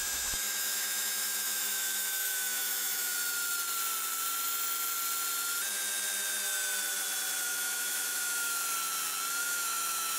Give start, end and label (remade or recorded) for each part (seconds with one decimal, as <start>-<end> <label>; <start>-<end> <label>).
0.0-3.1 remade; 3.1-7.4 recorded; 7.4-8.6 remade; 8.6-9.4 recorded; 9.4-10.2 remade